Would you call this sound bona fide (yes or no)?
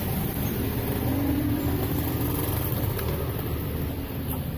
yes